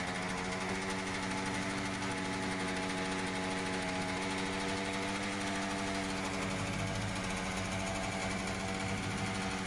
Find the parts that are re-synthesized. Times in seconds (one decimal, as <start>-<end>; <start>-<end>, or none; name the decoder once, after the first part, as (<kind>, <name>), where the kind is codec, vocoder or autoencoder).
none